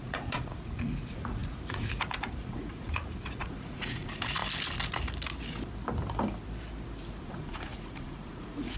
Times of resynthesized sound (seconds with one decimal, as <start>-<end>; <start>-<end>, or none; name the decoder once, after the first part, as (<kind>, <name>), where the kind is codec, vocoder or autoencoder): 0.0-4.4 (vocoder, Vocos); 7.2-8.8